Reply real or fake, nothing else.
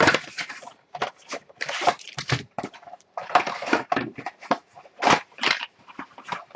fake